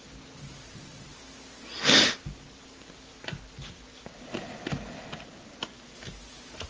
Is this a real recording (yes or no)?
yes